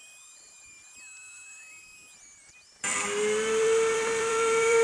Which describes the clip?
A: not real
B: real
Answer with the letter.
A